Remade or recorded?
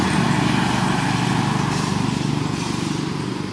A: recorded